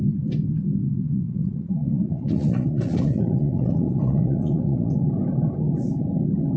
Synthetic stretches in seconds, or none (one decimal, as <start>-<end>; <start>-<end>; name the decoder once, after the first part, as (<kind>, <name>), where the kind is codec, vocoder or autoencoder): 0.9-4.9 (vocoder, Vocos)

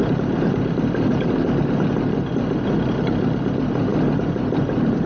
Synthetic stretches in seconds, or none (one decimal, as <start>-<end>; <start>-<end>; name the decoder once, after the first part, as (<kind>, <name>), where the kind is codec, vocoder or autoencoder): none